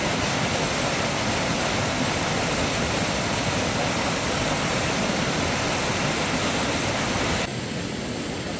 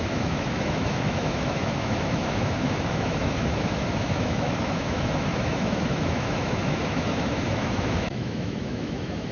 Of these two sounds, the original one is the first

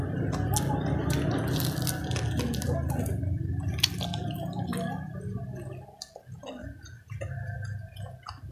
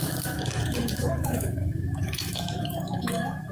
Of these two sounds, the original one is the first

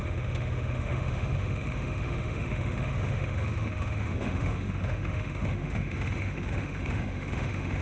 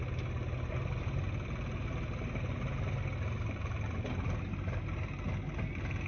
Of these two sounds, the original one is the second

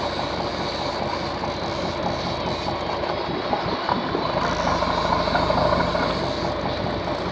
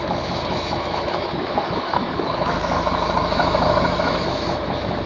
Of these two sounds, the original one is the first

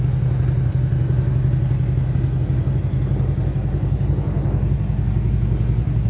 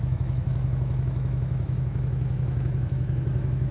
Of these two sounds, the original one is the first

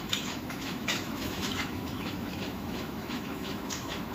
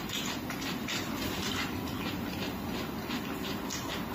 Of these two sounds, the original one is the second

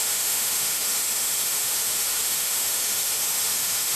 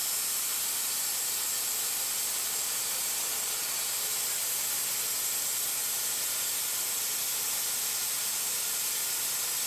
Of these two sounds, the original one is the second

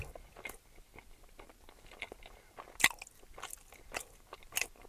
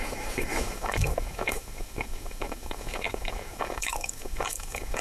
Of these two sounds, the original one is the first